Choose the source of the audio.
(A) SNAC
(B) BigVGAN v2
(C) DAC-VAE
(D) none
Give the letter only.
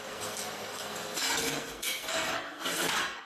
A